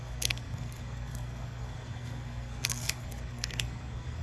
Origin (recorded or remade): remade